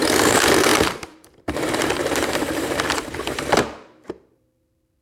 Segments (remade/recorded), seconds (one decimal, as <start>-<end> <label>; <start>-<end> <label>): 0.0-5.0 remade